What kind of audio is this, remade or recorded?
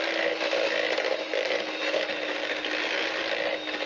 recorded